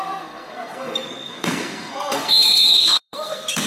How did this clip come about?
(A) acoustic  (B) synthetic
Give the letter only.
B